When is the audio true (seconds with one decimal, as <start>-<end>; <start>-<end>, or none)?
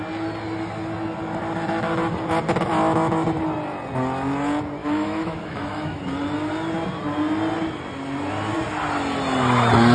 0.0-4.8; 6.0-9.9